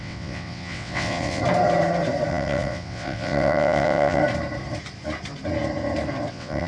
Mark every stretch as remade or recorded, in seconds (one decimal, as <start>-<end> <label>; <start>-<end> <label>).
0.0-1.4 remade; 1.4-2.3 recorded; 2.3-4.2 remade; 4.2-6.3 recorded; 6.3-6.7 remade